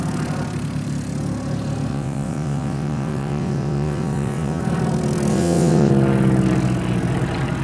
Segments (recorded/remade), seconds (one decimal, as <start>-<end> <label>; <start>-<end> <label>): 0.0-1.9 recorded; 1.9-4.6 remade; 4.6-5.3 recorded; 5.3-5.9 remade; 5.9-7.6 recorded